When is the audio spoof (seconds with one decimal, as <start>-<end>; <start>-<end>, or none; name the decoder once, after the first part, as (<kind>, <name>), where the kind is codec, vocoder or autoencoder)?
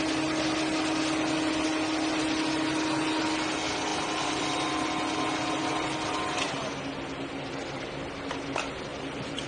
3.9-4.7 (vocoder, BigVGAN v2); 8.9-9.5